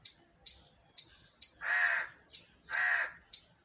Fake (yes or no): no